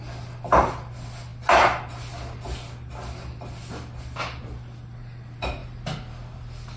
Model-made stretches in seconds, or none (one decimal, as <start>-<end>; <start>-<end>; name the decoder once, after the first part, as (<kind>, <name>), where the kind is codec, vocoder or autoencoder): none